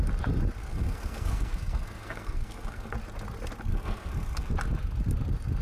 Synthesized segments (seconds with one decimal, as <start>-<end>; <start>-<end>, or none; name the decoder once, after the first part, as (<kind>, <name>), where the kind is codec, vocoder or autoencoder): 0.6-2.9 (codec, SNAC); 3.7-4.5